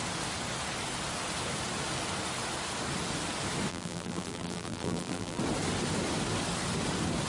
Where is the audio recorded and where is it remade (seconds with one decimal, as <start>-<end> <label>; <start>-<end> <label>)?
0.0-3.7 recorded; 3.7-5.4 remade; 5.4-7.3 recorded